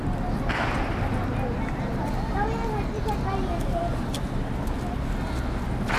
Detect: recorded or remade recorded